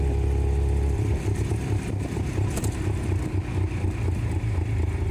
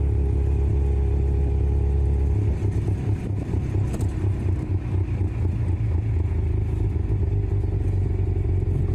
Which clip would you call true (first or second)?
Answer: second